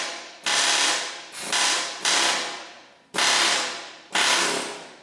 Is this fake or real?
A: real